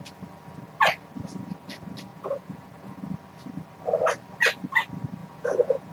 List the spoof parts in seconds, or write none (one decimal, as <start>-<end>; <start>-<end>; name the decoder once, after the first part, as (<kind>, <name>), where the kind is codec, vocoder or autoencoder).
2.1-3.0 (vocoder, Vocos); 5.2-5.9